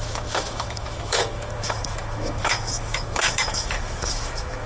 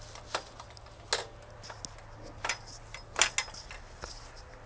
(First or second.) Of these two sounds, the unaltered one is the second